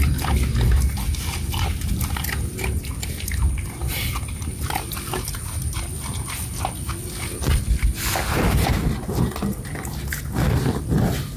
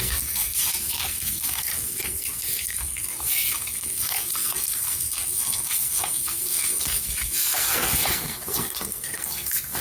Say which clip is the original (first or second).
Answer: first